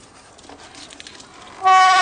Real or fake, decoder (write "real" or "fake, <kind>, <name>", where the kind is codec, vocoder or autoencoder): real